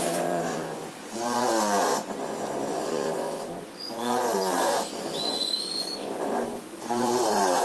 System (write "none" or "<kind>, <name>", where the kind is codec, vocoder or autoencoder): vocoder, Vocos